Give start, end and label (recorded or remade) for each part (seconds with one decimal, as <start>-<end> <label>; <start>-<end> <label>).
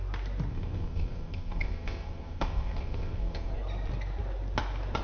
0.0-0.5 recorded; 0.5-3.5 remade; 3.5-5.0 recorded